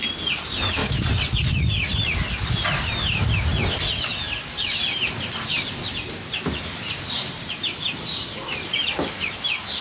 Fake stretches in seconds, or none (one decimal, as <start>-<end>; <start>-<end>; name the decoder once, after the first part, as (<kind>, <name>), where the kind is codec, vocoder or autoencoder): none